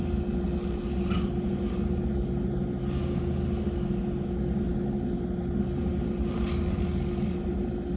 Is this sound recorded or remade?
recorded